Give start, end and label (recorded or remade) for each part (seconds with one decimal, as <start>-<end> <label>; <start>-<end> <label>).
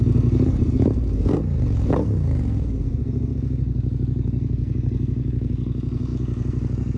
0.0-7.0 remade